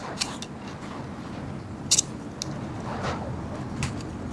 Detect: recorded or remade recorded